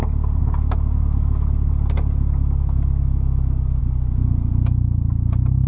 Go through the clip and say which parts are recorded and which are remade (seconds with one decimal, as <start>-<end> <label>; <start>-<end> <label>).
0.0-5.7 recorded